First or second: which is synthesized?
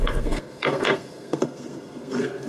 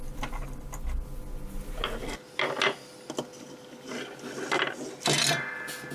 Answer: first